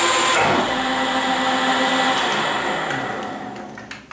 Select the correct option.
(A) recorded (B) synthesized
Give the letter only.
A